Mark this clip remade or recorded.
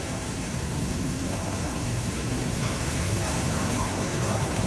remade